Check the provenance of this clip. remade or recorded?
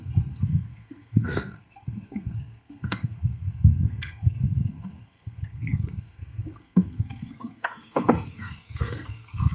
remade